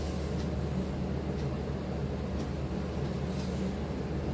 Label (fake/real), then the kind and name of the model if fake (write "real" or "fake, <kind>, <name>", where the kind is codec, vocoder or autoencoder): real